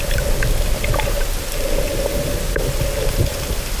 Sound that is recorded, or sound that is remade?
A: recorded